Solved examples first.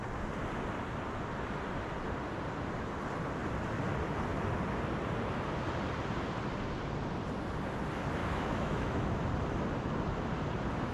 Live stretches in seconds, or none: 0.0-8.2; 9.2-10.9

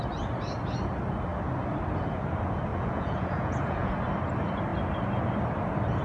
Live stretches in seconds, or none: 0.0-2.7; 3.9-6.0